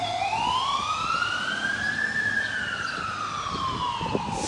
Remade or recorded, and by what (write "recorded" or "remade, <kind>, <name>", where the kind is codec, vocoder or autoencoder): recorded